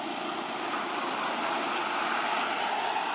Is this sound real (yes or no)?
yes